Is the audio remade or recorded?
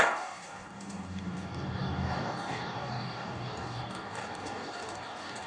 remade